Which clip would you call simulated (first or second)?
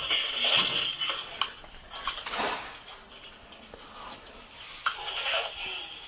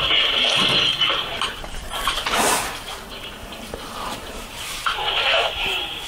second